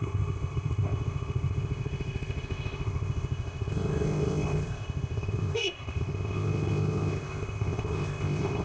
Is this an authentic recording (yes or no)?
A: no